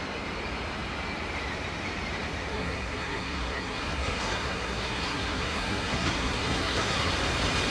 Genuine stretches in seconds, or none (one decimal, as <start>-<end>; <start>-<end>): 0.0-2.5; 7.1-7.7